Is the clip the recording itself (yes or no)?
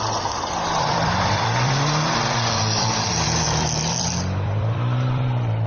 no